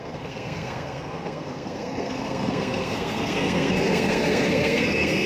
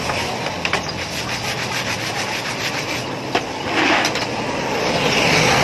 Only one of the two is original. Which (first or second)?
second